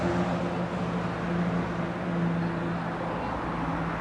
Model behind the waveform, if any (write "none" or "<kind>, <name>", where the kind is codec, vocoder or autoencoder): none